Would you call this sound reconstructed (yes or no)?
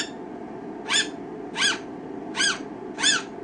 no